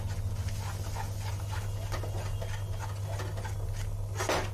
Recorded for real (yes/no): yes